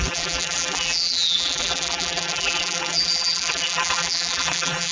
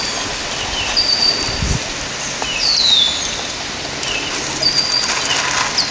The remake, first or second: first